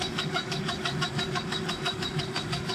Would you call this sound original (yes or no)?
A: no